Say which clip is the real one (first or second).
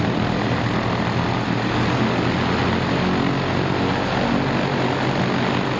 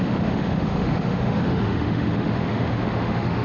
first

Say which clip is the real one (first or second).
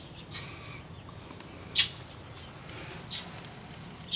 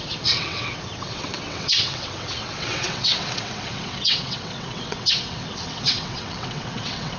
first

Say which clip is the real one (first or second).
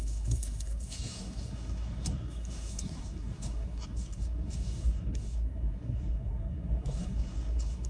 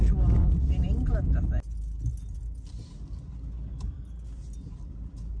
second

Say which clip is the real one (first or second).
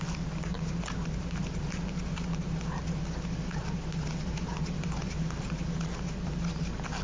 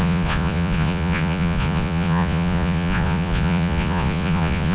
first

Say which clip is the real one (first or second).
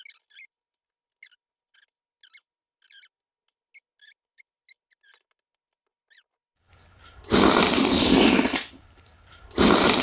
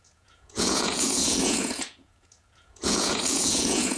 first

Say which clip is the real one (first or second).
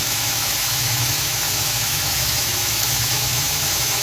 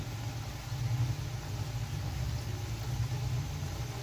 second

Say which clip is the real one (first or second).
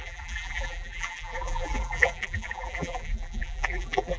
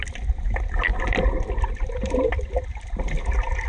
second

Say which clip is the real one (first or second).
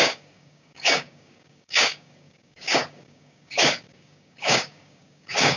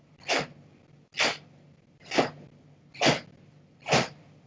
second